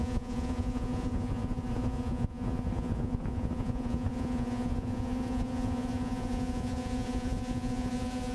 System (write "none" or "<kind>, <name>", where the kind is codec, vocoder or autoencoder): vocoder, Vocos